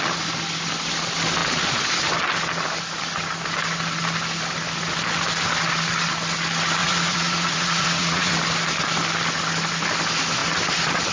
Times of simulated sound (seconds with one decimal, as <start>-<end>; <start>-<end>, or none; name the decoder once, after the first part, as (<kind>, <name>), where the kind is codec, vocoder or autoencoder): 6.8-8.3 (vocoder, Vocos)